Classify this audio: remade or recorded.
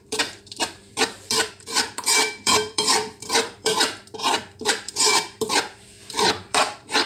remade